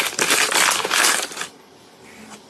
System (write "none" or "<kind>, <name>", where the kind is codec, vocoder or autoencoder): vocoder, BigVGAN v2